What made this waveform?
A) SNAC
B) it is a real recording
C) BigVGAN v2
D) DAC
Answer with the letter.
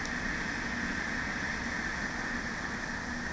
B